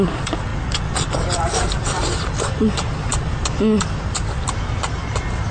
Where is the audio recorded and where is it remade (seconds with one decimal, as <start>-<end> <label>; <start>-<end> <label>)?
0.0-0.5 recorded; 0.5-2.2 remade; 2.2-5.5 recorded

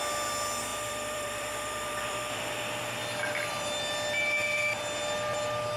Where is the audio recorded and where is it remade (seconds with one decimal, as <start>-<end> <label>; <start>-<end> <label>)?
0.0-0.7 recorded; 0.7-2.2 remade; 2.2-5.8 recorded

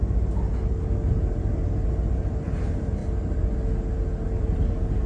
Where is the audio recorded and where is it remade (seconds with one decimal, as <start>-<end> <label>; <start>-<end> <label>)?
0.0-1.9 recorded; 1.9-3.0 remade; 3.0-4.4 recorded; 4.4-5.1 remade

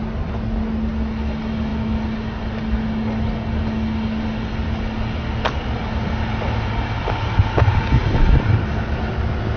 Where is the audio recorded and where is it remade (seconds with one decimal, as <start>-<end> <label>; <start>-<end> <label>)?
0.0-8.0 recorded; 8.0-9.1 remade; 9.1-9.6 recorded

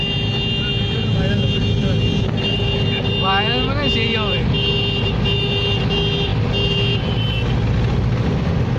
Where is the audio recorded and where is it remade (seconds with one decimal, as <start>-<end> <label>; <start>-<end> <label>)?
0.0-8.8 recorded

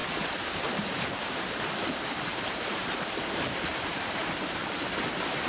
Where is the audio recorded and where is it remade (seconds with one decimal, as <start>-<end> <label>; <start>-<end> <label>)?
0.0-1.2 remade; 1.2-2.3 recorded; 2.3-3.0 remade; 3.0-3.7 recorded; 3.7-4.2 remade; 4.2-5.5 recorded

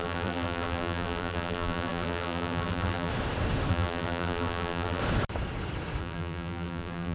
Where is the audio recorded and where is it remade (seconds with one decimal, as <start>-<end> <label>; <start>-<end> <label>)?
0.0-3.1 remade; 3.1-3.7 recorded; 3.7-5.0 remade; 5.0-6.0 recorded; 6.0-7.1 remade

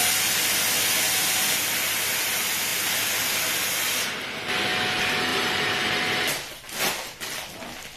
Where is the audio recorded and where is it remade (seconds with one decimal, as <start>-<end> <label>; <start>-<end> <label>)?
0.0-5.3 recorded; 5.3-6.0 remade; 6.0-8.0 recorded